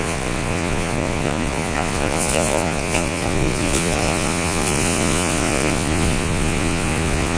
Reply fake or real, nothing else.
fake